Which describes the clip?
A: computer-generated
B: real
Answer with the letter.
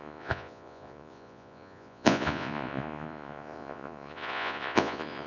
A